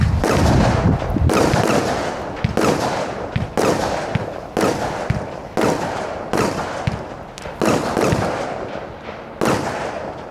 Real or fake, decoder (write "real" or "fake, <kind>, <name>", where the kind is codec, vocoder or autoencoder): real